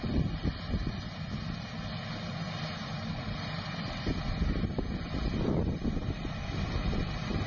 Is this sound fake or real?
real